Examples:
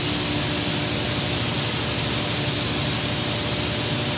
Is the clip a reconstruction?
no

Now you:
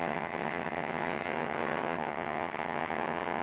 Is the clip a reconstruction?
yes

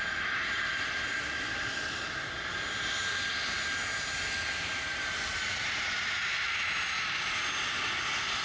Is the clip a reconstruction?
no